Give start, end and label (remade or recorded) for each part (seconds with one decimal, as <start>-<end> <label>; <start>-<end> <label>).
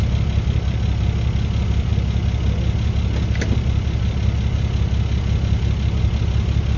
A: 0.0-6.8 recorded